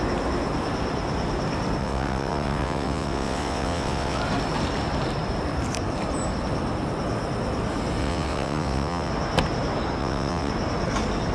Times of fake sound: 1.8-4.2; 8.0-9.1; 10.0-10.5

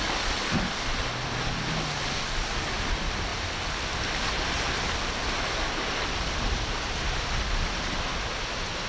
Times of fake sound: none